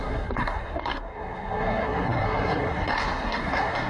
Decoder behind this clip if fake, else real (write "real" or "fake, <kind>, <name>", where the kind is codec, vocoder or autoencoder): fake, codec, SNAC